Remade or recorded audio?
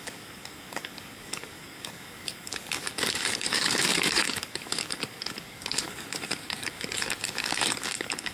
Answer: remade